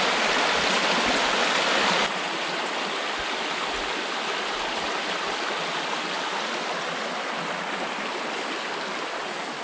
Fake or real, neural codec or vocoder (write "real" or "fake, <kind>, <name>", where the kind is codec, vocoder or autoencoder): real